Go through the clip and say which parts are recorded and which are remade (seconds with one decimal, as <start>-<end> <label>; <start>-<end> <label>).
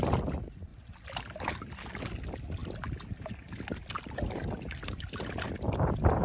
0.0-6.2 recorded